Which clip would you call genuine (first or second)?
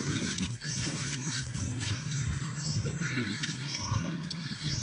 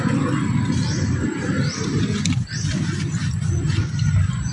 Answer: second